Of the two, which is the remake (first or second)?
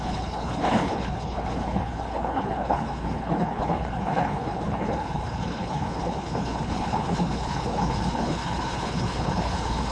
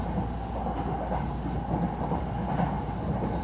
first